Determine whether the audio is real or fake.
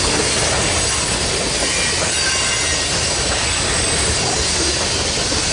real